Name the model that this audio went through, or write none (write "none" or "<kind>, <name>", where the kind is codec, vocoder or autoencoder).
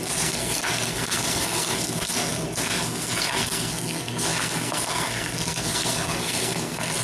codec, SNAC